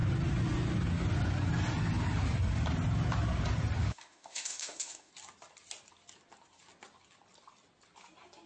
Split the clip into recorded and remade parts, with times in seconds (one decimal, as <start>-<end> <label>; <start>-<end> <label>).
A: 0.0-3.8 recorded; 3.8-5.1 remade; 5.1-8.5 recorded